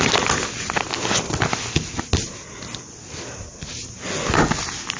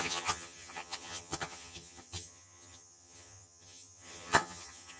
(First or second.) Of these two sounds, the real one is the first